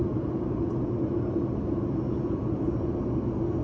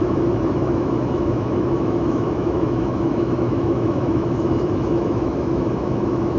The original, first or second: first